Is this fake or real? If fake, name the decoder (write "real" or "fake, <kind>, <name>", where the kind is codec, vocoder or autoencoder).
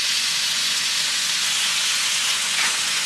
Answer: fake, vocoder, Vocos